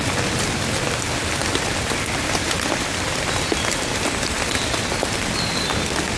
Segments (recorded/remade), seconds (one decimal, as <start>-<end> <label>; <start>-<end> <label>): 0.0-6.2 recorded